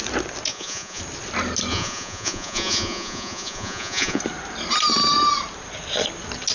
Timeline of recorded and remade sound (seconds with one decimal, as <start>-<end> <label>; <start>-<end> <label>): 0.0-0.5 recorded; 0.5-1.0 remade; 1.0-1.7 recorded; 1.7-4.2 remade; 4.2-6.5 recorded